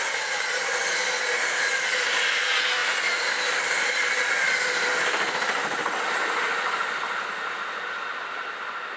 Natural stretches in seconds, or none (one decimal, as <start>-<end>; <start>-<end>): 0.0-9.0